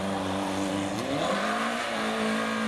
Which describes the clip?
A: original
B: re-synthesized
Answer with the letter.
A